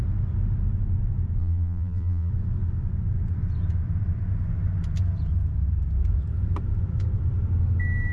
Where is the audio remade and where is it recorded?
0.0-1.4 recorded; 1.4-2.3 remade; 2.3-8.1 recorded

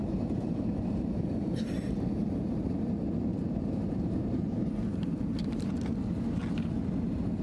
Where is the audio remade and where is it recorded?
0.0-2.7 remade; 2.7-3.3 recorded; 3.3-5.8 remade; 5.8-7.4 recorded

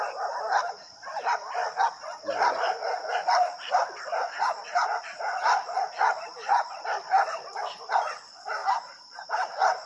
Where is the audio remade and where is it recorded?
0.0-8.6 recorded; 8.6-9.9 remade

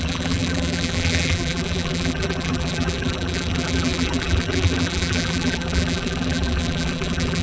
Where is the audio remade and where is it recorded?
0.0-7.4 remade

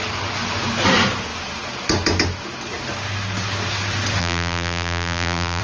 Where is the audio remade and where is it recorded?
0.0-4.2 recorded; 4.2-5.6 remade

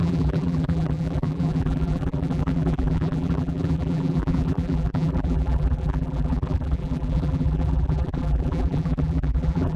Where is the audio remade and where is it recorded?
0.0-9.8 remade